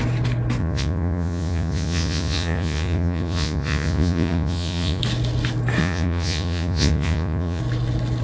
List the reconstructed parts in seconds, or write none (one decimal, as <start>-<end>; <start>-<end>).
0.6-5.0; 5.8-7.6